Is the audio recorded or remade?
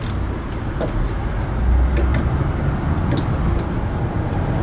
recorded